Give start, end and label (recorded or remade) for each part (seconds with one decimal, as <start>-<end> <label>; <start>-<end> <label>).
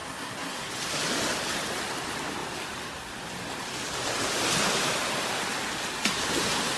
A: 0.0-0.7 remade; 0.7-6.8 recorded